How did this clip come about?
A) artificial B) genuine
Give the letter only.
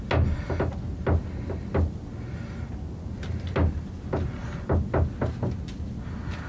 B